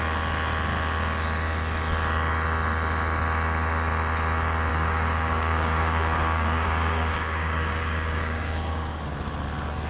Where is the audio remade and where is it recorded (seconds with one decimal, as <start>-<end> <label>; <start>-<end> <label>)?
0.0-4.7 recorded; 4.7-9.0 remade; 9.0-9.9 recorded